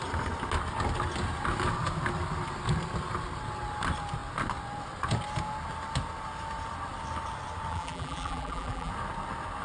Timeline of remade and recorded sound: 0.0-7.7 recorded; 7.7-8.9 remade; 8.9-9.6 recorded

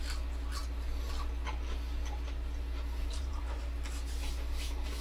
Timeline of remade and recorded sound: 0.0-3.0 recorded; 3.0-3.6 remade; 3.6-5.0 recorded